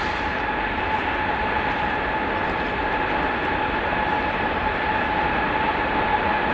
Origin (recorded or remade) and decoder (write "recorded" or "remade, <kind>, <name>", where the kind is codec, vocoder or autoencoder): recorded